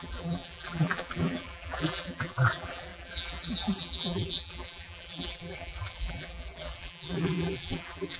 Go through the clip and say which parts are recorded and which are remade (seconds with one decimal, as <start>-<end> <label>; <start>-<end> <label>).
0.0-8.2 remade